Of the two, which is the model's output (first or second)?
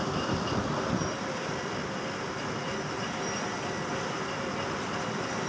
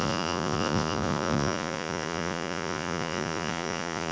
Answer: second